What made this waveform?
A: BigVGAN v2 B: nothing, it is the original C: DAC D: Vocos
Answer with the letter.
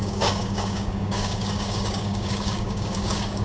C